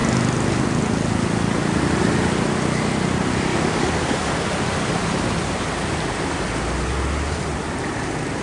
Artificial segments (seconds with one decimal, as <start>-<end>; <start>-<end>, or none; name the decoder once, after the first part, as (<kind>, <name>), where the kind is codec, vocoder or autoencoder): 3.5-4.4 (codec, DAC)